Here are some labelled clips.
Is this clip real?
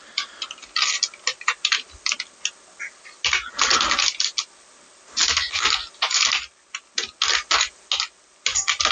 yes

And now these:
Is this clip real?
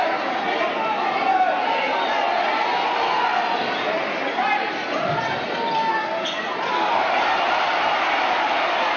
yes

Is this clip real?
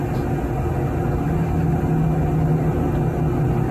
yes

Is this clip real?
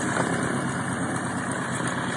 yes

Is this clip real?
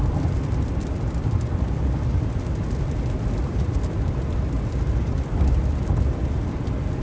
no